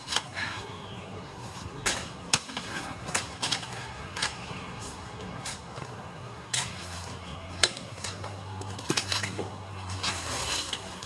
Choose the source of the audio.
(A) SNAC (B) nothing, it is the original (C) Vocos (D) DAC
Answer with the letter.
A